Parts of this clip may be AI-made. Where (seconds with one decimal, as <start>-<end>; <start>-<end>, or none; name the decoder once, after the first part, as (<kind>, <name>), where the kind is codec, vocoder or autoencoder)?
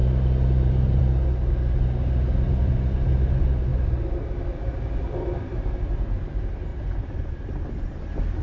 6.7-7.4 (vocoder, BigVGAN v2)